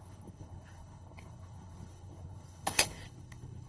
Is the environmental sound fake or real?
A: fake